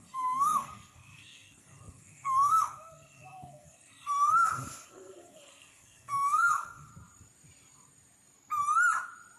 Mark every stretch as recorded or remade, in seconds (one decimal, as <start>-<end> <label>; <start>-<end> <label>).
0.0-6.9 remade; 6.9-9.4 recorded

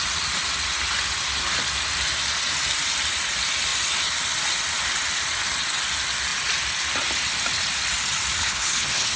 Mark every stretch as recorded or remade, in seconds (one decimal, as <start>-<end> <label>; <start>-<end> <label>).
0.0-8.4 recorded; 8.4-9.2 remade